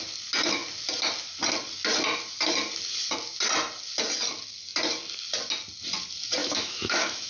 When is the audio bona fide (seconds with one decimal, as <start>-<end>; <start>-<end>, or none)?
0.0-6.4